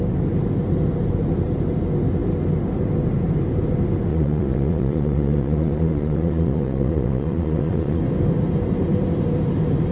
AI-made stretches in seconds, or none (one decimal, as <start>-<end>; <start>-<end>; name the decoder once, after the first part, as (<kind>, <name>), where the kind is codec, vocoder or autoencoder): 4.1-8.0 (vocoder, Vocos)

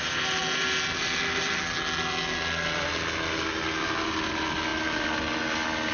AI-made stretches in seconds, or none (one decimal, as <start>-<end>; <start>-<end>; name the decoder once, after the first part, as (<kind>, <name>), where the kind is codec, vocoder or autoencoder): none